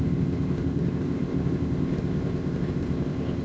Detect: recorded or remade remade